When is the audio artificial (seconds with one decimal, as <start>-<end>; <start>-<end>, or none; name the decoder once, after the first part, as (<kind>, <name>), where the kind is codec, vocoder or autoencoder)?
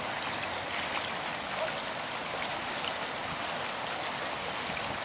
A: none